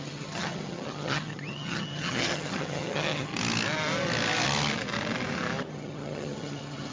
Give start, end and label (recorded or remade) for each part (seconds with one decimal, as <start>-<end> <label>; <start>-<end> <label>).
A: 0.0-3.3 remade; 3.3-5.7 recorded; 5.7-6.9 remade